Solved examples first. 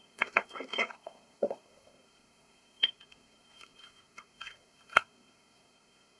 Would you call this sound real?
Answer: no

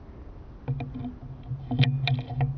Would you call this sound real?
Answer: yes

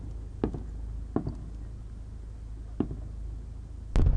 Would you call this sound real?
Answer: yes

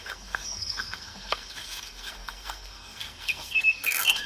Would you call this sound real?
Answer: no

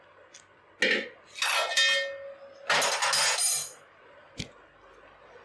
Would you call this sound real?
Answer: yes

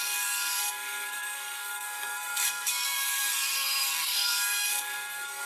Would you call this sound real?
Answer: no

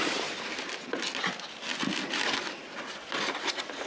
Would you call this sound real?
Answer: yes